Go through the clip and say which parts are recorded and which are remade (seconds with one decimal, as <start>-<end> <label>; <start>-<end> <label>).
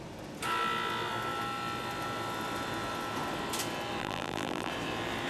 0.0-4.0 recorded; 4.0-4.7 remade; 4.7-5.3 recorded